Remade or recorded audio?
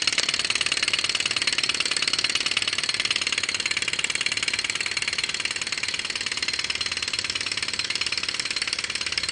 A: recorded